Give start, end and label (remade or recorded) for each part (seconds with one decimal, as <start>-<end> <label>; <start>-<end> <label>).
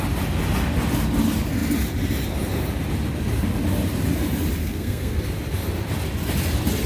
0.0-4.6 recorded; 4.6-5.2 remade; 5.2-6.9 recorded